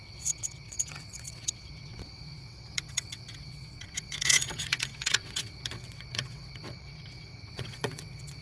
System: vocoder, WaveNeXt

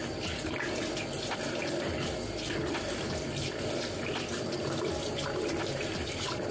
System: none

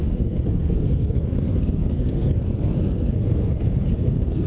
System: codec, SNAC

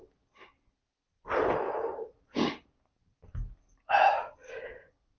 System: none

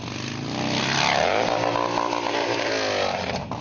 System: none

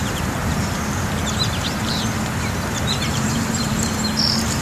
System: vocoder, BigVGAN v2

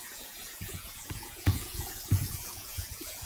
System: vocoder, Vocos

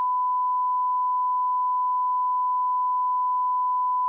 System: none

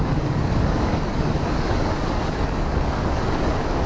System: codec, DAC